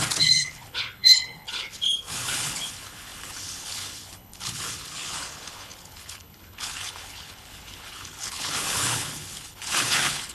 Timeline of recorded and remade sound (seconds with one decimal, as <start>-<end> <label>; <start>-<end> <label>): 0.0-10.3 remade